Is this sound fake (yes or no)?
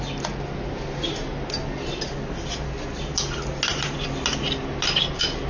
no